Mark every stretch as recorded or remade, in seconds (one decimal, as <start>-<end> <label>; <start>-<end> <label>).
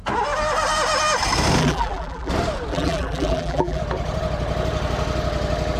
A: 0.0-1.6 recorded; 1.6-2.3 remade; 2.3-2.7 recorded; 2.7-3.8 remade; 3.8-5.8 recorded